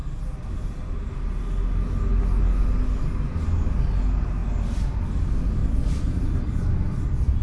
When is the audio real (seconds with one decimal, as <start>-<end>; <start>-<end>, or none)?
1.1-5.6; 6.6-7.4